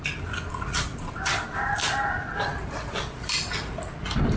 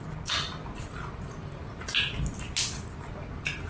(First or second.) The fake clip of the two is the first